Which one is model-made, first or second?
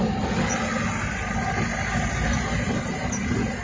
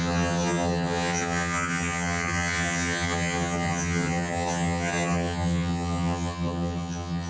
second